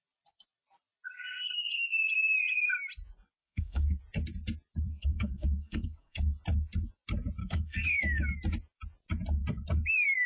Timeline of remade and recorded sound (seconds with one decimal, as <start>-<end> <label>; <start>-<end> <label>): 0.0-3.4 recorded; 3.4-4.0 remade; 4.0-4.9 recorded; 4.9-6.3 remade; 6.3-7.4 recorded; 7.4-8.0 remade; 8.0-10.3 recorded